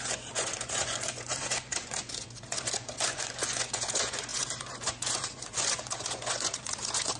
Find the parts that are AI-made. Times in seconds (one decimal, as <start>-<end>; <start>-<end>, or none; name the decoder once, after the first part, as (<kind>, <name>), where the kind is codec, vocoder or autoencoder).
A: 0.0-7.2 (vocoder, Vocos)